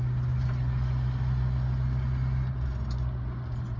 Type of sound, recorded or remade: recorded